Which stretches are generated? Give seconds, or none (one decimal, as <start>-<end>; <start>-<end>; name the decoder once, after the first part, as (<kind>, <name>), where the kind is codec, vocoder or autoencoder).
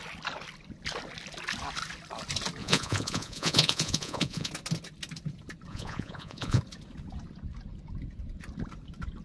2.6-4.5 (vocoder, Vocos); 5.7-6.6